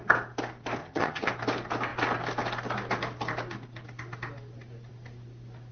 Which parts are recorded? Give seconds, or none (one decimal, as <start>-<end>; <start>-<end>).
0.0-0.8; 1.3-5.7

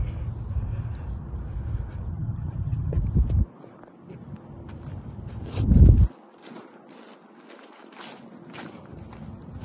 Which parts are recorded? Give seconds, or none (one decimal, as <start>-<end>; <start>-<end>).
0.0-2.1; 3.0-9.6